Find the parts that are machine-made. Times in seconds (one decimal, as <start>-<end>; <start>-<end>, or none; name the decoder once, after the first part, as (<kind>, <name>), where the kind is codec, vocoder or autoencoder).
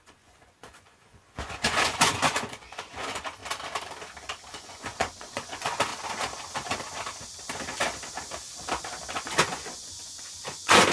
0.0-3.4 (vocoder, Vocos); 4.5-5.9; 9.1-10.9